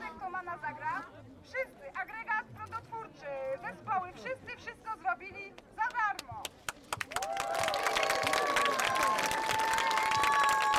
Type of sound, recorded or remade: recorded